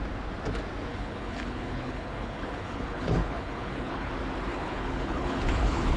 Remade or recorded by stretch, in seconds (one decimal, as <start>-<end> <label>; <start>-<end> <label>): 0.0-0.9 recorded; 0.9-4.1 remade; 4.1-4.5 recorded; 4.5-6.0 remade